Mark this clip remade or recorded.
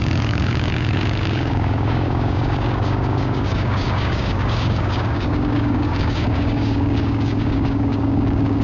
remade